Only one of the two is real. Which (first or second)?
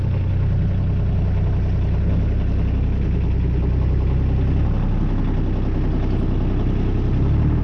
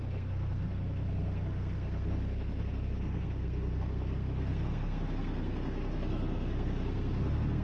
first